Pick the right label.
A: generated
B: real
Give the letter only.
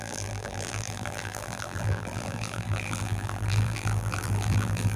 A